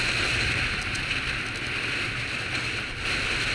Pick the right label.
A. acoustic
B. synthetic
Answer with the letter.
A